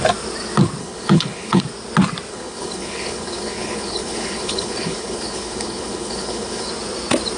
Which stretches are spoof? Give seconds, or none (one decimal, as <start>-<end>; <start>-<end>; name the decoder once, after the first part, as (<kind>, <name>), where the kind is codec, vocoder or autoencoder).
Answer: 0.8-1.6 (codec, HILCodec); 2.3-6.7